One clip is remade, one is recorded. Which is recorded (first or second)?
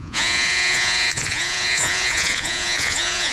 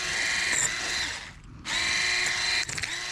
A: second